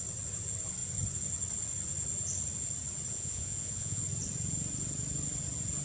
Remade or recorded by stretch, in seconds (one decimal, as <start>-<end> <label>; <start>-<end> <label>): 0.0-3.1 recorded; 3.1-4.0 remade; 4.0-5.8 recorded